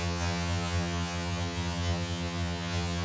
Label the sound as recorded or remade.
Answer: remade